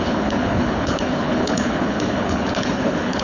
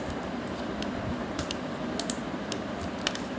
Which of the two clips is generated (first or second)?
first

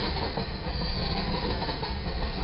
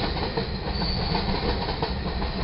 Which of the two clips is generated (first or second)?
first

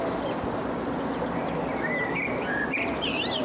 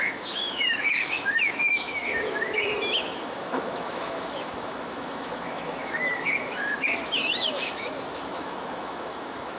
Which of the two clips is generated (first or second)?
second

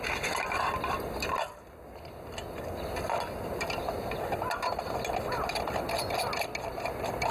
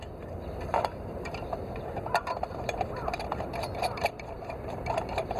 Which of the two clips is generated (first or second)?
second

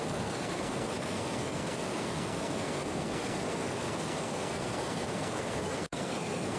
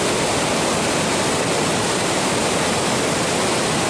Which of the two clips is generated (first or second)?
first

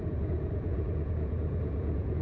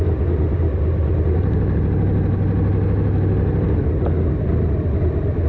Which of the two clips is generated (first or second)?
first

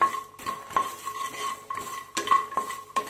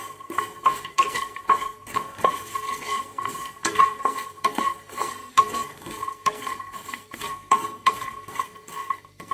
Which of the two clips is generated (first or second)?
second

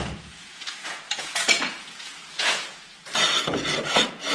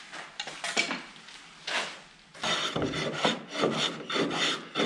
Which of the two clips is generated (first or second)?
first